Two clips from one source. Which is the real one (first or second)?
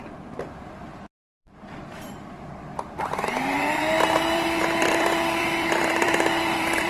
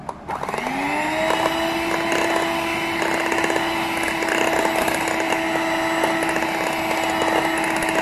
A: second